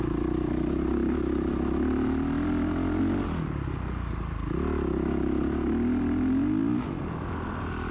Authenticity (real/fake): real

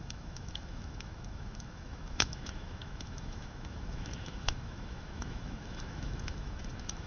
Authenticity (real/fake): fake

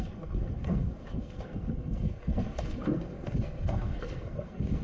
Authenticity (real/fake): fake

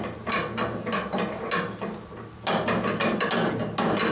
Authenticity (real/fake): real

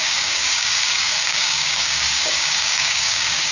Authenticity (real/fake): fake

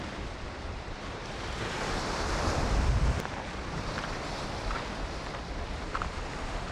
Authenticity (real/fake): fake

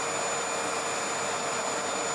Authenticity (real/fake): real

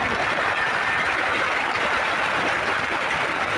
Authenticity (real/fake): real